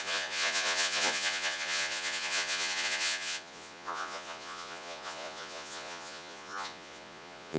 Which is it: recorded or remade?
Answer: remade